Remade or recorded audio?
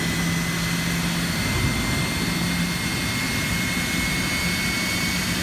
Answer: recorded